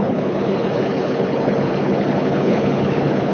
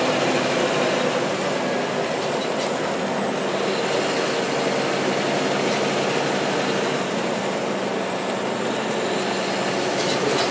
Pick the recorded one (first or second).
second